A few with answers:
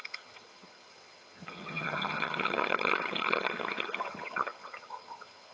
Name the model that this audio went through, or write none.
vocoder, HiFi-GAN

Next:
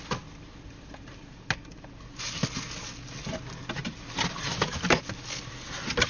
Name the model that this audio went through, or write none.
none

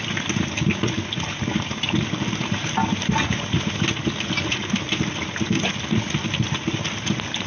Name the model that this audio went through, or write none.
none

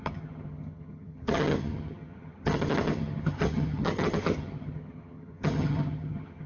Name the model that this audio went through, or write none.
vocoder, HiFi-GAN